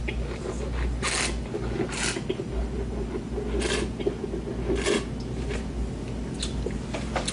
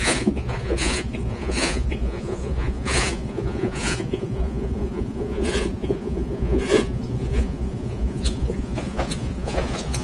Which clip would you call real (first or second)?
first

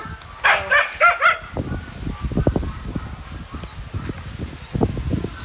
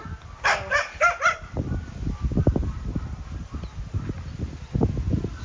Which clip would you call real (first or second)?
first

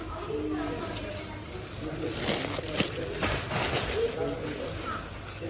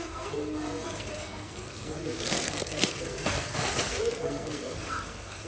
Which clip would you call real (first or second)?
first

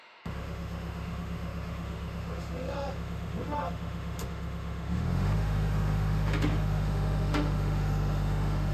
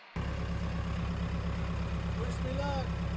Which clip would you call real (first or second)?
second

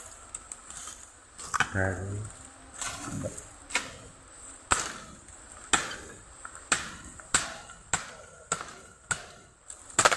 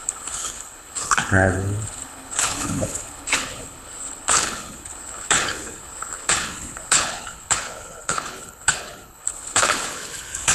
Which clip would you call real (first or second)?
first